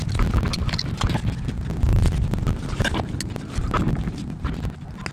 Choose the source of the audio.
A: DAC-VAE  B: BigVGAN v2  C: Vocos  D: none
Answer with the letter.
D